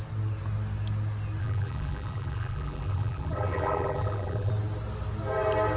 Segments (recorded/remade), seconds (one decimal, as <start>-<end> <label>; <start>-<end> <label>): 0.0-1.4 recorded; 1.4-4.5 remade; 4.5-5.8 recorded